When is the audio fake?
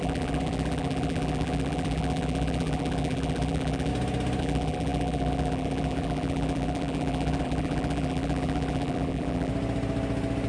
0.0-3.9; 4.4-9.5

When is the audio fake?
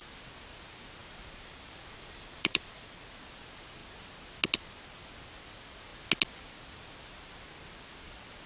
1.0-3.0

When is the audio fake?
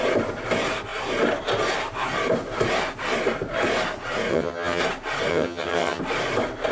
4.3-4.8; 5.3-6.0